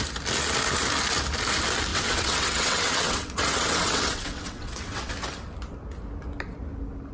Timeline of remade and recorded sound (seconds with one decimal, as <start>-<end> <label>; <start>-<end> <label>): 0.0-1.9 recorded; 1.9-5.1 remade; 5.1-7.1 recorded

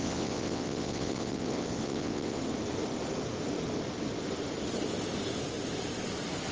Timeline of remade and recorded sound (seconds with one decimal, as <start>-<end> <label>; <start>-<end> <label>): 0.0-2.4 remade; 2.4-6.5 recorded